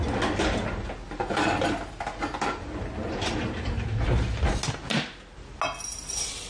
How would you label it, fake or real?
real